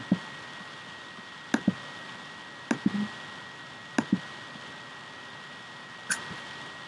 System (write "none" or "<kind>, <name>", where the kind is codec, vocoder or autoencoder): none